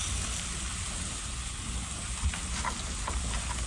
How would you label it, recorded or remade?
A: recorded